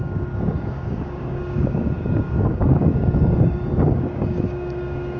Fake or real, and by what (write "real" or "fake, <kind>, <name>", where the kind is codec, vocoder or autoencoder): fake, codec, DAC